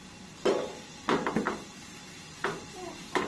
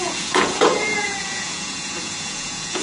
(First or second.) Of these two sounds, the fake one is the second